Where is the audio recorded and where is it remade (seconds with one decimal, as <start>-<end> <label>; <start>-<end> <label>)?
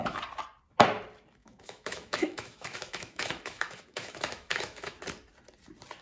0.0-1.4 recorded; 1.4-5.0 remade; 5.0-6.0 recorded